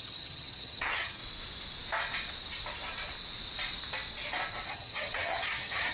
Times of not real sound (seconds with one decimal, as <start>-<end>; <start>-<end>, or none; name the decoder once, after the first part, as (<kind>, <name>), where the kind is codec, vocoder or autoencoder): 0.0-1.2 (vocoder, HiFi-GAN); 4.7-5.9